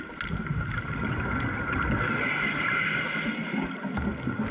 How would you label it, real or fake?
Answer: real